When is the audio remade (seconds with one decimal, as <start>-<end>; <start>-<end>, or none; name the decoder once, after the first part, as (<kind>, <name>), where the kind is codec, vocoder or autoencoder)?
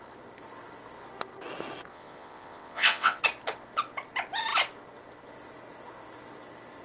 1.9-3.2 (vocoder, WaveNeXt)